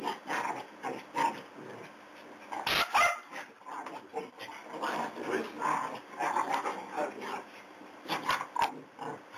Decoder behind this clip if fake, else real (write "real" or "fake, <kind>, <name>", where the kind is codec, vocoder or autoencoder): real